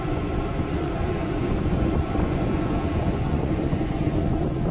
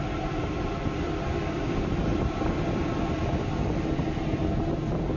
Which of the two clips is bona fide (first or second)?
second